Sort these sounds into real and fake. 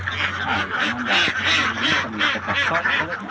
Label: real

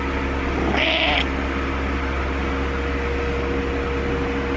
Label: real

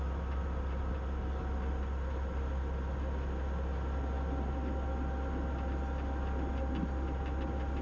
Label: real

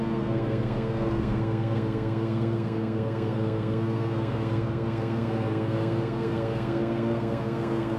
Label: fake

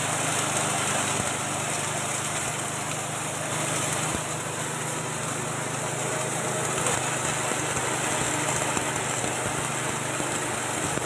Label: real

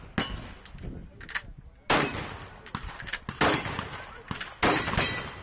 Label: real